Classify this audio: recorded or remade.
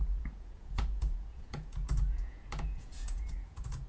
remade